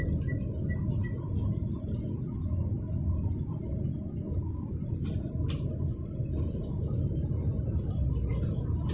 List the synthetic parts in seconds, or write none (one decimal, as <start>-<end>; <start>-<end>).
none